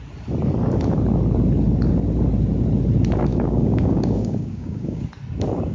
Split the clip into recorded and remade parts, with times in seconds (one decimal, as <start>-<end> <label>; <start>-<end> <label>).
0.0-3.3 recorded; 3.3-5.0 remade; 5.0-5.7 recorded